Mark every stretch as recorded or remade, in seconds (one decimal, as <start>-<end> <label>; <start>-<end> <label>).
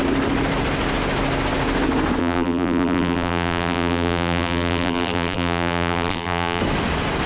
0.0-2.2 recorded; 2.2-6.6 remade; 6.6-7.3 recorded